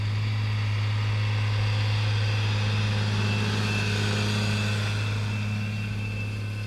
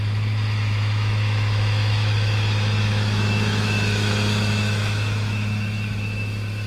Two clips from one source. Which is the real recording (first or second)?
first